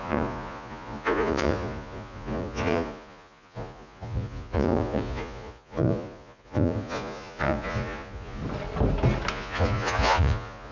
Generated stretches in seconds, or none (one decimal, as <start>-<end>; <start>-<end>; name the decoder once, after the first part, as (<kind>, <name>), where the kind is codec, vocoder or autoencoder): 0.0-8.4 (vocoder, Vocos); 9.3-10.7